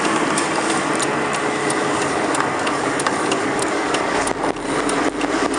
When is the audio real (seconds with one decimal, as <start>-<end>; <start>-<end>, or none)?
0.0-1.6; 4.3-5.6